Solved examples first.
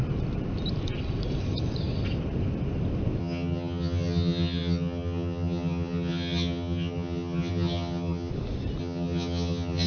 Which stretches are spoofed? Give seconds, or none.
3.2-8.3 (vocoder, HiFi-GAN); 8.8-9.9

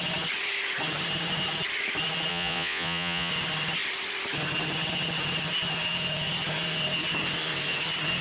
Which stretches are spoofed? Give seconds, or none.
2.3-3.3 (vocoder, Vocos)

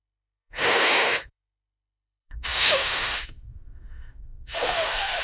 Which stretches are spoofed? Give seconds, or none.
0.0-5.2 (autoencoder, DAC-VAE)